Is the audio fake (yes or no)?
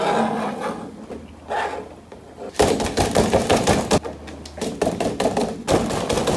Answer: no